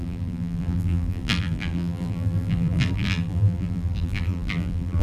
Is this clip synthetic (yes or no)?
yes